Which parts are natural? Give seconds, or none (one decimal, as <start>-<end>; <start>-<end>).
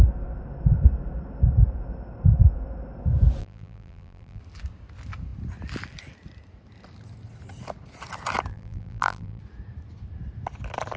0.0-3.4; 4.4-8.5; 9.4-11.0